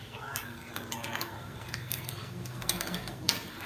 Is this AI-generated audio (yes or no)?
yes